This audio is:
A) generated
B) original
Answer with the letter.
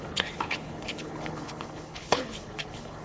A